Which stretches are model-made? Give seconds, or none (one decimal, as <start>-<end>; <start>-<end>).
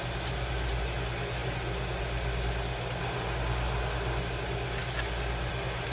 none